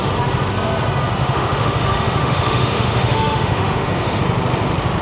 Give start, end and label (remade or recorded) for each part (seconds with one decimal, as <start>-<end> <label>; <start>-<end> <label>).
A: 0.0-1.2 recorded; 1.2-4.2 remade; 4.2-5.0 recorded